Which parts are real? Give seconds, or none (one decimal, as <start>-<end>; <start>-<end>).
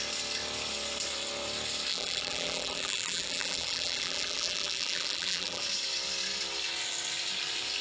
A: 0.0-1.9; 5.6-7.8